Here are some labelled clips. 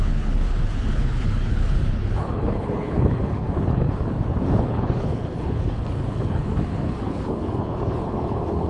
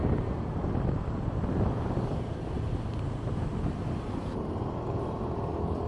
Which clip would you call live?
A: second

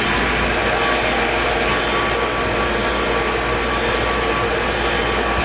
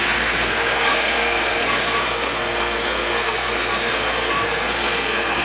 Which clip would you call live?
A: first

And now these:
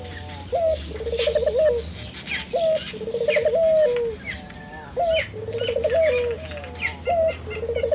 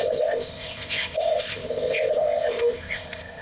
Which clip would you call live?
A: first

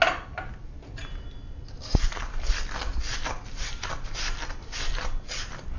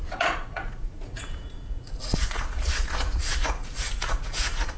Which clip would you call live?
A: first